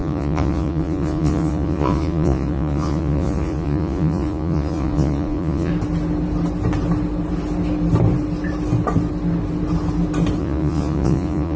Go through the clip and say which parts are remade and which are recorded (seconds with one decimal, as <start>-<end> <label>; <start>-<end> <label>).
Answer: 0.0-5.7 remade; 5.7-10.4 recorded; 10.4-11.6 remade